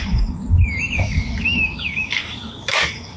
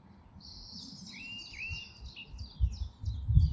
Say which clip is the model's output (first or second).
first